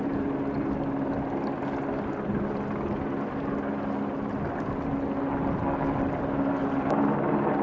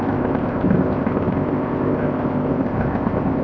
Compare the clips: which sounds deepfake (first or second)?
second